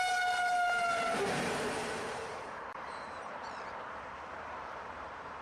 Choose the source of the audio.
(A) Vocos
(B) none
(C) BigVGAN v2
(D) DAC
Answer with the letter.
C